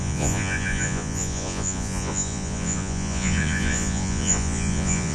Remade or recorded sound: remade